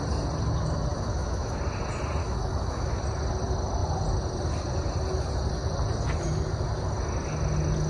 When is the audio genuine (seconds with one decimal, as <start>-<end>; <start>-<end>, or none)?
0.0-0.9; 1.6-2.2; 3.0-7.9